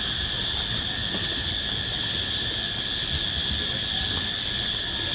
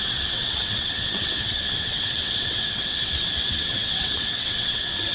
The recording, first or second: first